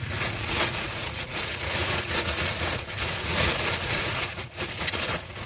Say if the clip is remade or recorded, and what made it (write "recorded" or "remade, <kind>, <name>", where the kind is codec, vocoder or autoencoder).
remade, vocoder, Vocos